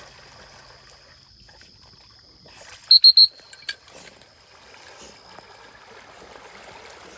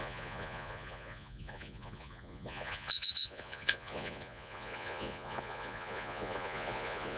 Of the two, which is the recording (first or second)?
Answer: first